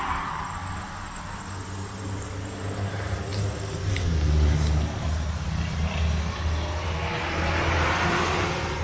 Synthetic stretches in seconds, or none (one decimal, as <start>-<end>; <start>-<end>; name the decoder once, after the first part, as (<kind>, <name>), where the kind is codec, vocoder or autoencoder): 0.0-0.6 (vocoder, BigVGAN v2); 2.9-3.3; 7.2-8.8